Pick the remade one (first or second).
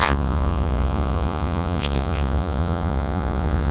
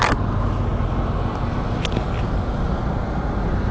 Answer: first